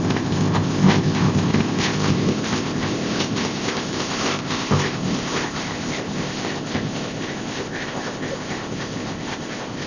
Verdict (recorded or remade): remade